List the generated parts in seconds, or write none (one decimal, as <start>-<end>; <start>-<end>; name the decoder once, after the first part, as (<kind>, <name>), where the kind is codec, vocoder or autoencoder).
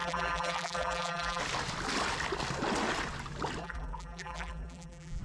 0.0-1.4 (vocoder, BigVGAN v2); 3.6-5.2